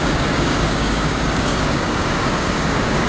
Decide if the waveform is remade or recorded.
remade